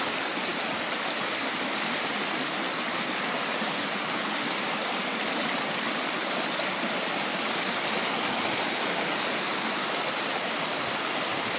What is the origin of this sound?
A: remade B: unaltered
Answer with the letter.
B